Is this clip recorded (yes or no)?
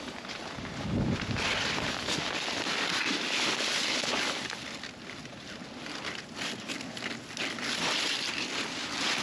yes